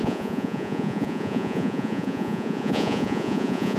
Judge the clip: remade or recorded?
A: remade